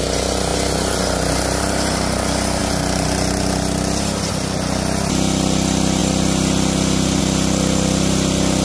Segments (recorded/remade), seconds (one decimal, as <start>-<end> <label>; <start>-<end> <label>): 0.0-8.6 recorded